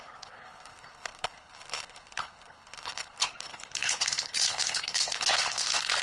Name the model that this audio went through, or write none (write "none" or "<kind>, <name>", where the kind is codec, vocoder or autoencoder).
codec, HILCodec